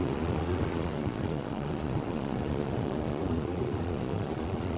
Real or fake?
fake